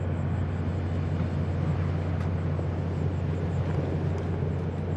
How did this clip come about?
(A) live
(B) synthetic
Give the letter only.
A